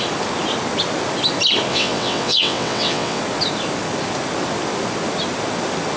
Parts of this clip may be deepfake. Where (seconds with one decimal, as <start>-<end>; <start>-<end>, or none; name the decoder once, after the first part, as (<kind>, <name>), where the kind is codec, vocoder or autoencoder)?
1.7-3.2 (vocoder, WaveNeXt)